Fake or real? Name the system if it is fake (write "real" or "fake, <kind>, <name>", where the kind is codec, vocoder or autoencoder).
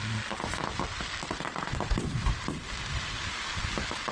fake, vocoder, BigVGAN v2